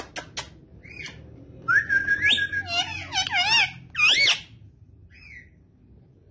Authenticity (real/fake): real